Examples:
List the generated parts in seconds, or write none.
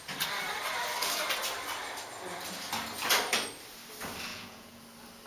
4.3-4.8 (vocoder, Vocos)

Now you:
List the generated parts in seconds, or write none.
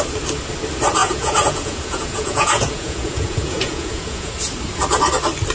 1.0-4.3 (vocoder, Vocos)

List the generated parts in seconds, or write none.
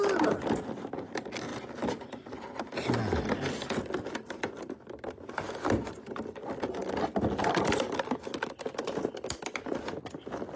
1.5-2.3 (vocoder, BigVGAN v2)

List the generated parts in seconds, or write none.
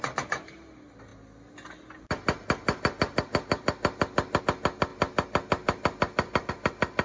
none